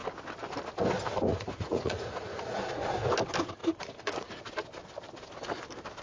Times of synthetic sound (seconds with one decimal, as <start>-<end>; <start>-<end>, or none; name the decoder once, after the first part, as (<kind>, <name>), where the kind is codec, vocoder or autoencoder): 1.3-2.4 (vocoder, Vocos); 3.6-4.4